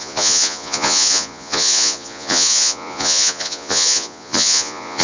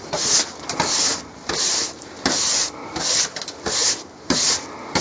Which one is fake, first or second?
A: first